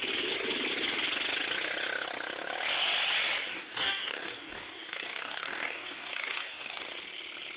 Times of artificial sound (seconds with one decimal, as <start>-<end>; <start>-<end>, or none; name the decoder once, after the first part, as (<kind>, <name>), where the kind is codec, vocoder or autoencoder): 3.5-6.8 (codec, DAC)